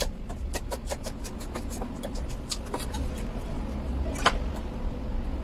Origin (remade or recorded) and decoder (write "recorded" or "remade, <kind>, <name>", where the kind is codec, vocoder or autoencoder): recorded